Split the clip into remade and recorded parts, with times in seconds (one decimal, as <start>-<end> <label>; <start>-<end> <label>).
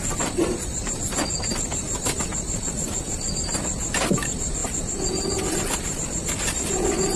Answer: 0.0-0.7 remade; 0.7-1.7 recorded; 1.7-2.3 remade; 2.3-3.3 recorded; 3.3-7.2 remade